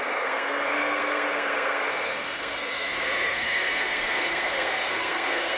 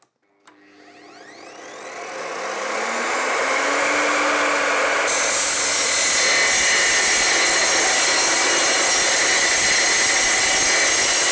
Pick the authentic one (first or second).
second